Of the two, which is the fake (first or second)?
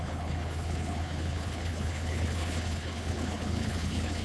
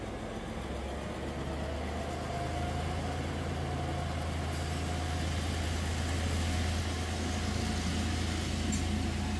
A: first